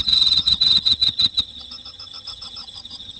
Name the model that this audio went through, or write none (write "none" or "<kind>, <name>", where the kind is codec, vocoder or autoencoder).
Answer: vocoder, HiFi-GAN